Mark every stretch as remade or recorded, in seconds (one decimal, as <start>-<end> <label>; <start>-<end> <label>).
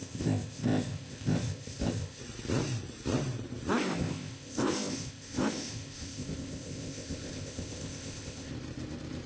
0.0-2.2 remade; 2.2-3.7 recorded; 3.7-8.5 remade; 8.5-9.3 recorded